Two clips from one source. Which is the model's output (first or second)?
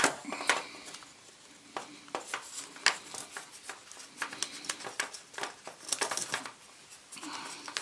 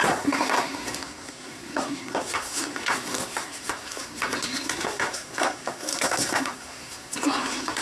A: second